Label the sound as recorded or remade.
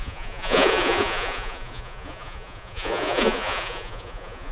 remade